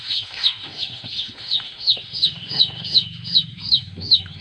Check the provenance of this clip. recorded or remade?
remade